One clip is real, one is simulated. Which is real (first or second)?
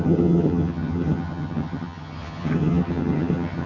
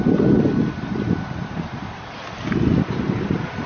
second